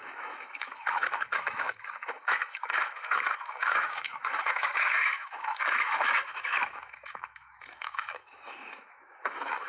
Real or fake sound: fake